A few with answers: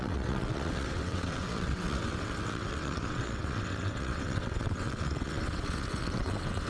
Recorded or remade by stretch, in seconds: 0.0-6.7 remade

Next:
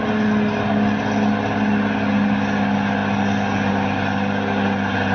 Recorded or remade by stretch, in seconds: 0.0-5.1 recorded

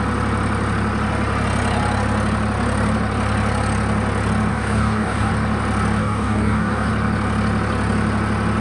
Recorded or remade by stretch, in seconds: 0.0-4.5 recorded; 4.5-5.3 remade; 5.3-6.0 recorded; 6.0-6.9 remade; 6.9-8.6 recorded

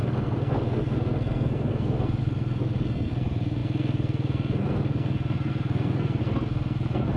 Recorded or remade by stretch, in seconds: 0.0-7.2 remade

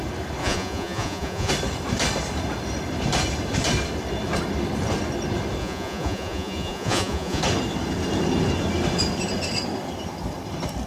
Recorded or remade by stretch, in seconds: 0.0-0.4 recorded; 0.4-1.5 remade; 1.5-5.6 recorded; 5.6-7.4 remade; 7.4-10.9 recorded

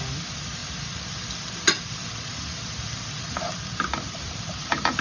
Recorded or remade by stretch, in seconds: 0.0-5.0 recorded